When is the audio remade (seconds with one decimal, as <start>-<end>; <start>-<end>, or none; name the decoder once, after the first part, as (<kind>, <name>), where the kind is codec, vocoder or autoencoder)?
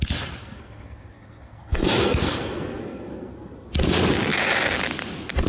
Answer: 0.4-3.7 (codec, SNAC)